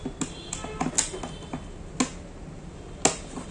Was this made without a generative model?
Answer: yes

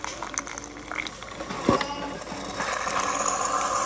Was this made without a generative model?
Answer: yes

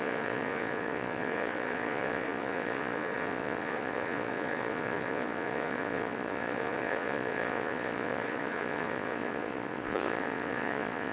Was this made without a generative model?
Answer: no